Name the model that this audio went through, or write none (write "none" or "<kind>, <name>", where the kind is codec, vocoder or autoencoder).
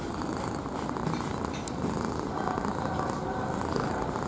none